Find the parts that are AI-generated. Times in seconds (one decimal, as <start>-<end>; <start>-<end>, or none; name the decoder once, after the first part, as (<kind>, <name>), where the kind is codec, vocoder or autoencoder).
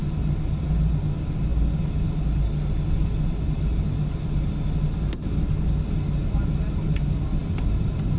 none